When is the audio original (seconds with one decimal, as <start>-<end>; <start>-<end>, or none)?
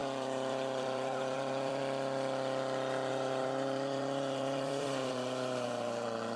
1.8-3.1